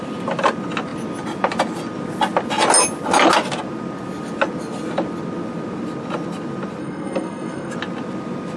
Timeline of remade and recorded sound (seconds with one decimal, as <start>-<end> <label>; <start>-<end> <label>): 0.0-6.8 recorded; 6.8-7.7 remade; 7.7-8.6 recorded